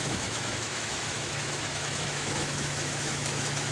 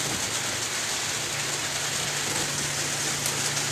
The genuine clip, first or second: second